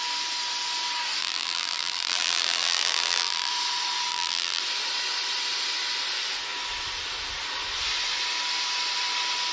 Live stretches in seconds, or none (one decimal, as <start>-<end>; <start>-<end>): 0.0-1.2; 3.5-4.1; 4.6-9.5